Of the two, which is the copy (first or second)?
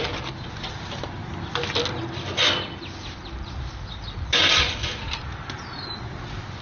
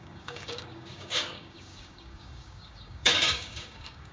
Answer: second